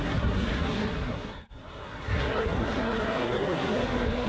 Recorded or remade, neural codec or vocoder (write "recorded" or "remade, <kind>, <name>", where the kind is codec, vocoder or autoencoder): remade, codec, SNAC